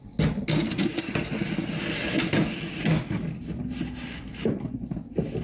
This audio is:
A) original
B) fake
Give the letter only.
A